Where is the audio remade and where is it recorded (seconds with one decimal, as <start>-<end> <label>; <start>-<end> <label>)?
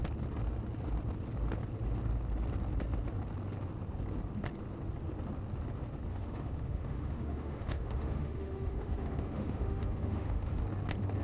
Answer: 0.0-6.1 recorded; 6.1-10.6 remade; 10.6-11.2 recorded